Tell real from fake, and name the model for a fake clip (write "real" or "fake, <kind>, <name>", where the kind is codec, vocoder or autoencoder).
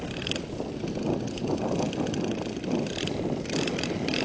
real